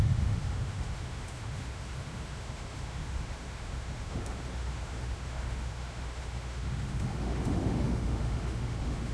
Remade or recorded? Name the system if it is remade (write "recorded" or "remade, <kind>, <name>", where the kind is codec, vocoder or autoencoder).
remade, autoencoder, DAC-VAE